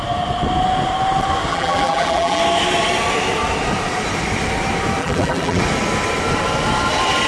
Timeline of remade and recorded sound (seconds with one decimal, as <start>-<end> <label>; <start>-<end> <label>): 0.0-1.5 recorded; 1.5-2.4 remade; 2.4-5.0 recorded; 5.0-5.6 remade; 5.6-7.3 recorded

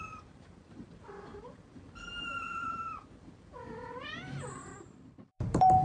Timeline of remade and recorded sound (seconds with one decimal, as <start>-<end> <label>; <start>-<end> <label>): 0.0-5.8 remade

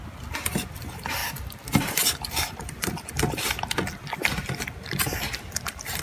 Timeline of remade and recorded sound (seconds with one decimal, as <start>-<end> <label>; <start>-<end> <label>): 0.0-1.2 recorded; 1.2-3.3 remade; 3.3-6.0 recorded

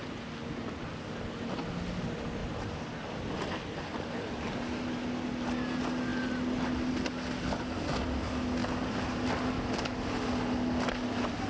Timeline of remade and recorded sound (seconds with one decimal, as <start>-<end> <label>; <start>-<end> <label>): 0.0-2.4 recorded; 2.4-4.4 remade; 4.4-6.1 recorded; 6.1-6.9 remade; 6.9-8.6 recorded; 8.6-9.6 remade; 9.6-11.5 recorded

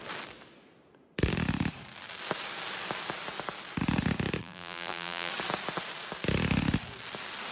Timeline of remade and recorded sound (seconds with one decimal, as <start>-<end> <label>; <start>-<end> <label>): 0.0-4.4 recorded; 4.4-5.3 remade; 5.3-7.5 recorded